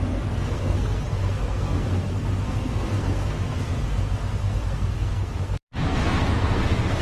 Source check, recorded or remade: remade